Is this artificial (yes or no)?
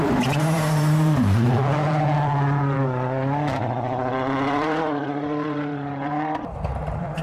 yes